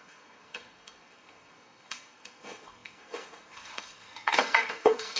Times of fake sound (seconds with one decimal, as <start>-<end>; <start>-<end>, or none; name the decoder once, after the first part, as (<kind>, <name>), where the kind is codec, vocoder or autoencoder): 0.0-5.2 (codec, SNAC)